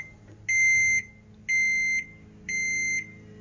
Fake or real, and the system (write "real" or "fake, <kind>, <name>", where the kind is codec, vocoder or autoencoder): real